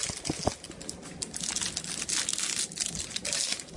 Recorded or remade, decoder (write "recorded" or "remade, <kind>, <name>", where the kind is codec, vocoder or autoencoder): recorded